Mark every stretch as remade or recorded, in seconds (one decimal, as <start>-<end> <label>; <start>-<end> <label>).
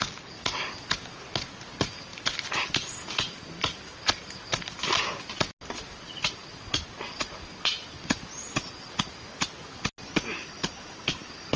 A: 0.0-11.6 recorded